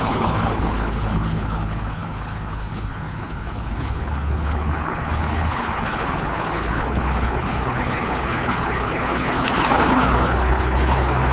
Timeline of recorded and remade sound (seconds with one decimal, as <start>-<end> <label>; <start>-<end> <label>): 0.0-11.3 remade